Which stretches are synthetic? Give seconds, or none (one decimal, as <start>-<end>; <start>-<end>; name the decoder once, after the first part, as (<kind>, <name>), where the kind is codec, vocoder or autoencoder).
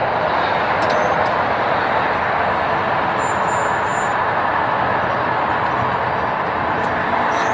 none